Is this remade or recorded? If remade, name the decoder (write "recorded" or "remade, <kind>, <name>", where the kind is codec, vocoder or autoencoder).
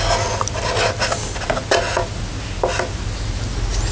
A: recorded